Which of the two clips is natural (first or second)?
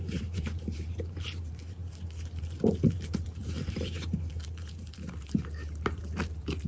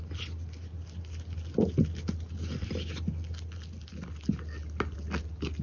second